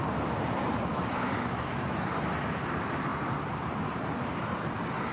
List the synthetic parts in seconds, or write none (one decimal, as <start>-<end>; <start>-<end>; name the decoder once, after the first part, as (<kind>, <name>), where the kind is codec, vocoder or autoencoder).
0.9-2.1 (autoencoder, DAC-VAE)